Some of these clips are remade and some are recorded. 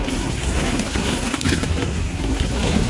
remade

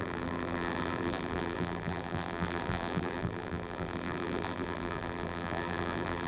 remade